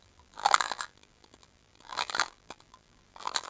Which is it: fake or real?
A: fake